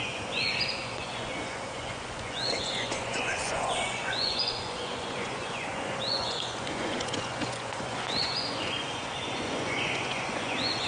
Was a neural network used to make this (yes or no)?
yes